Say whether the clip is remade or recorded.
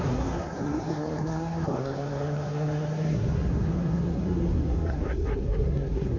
remade